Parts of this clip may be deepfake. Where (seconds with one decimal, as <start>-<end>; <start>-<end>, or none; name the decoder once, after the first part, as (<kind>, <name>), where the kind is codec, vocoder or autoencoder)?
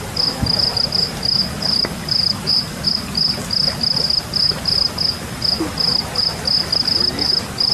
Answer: 1.4-4.9 (vocoder, BigVGAN v2); 5.9-6.6